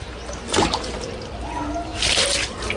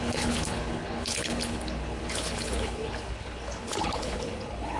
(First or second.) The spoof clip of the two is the second